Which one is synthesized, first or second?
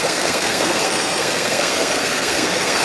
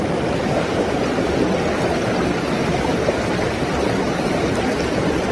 first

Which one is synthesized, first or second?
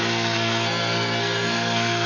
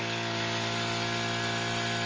first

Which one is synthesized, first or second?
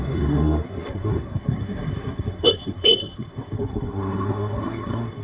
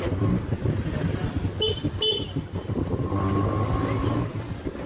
first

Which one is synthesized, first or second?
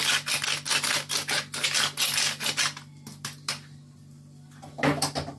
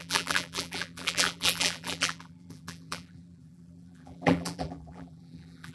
second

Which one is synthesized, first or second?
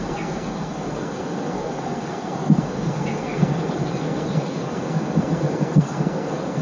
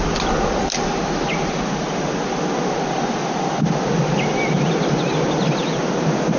first